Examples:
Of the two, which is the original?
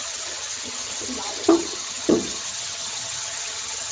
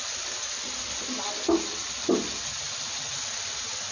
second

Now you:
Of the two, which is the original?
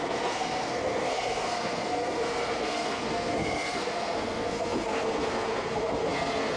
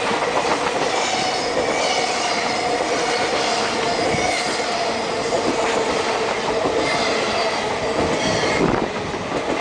second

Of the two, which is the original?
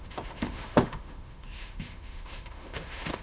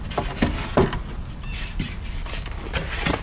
second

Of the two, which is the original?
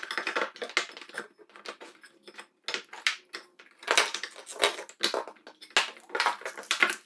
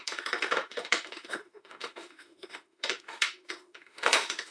first